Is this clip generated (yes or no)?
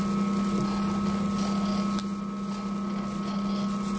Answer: no